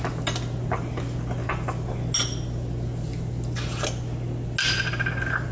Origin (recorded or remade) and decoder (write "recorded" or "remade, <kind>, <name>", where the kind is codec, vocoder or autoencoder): recorded